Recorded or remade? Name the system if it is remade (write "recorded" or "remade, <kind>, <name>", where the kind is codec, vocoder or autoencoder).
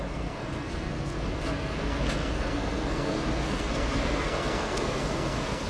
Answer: remade, codec, SNAC